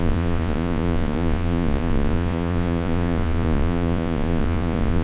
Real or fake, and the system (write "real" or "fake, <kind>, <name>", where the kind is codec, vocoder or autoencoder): fake, vocoder, Vocos